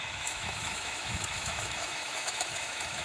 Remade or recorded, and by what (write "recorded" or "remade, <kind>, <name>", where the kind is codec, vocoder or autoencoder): remade, autoencoder, DAC-VAE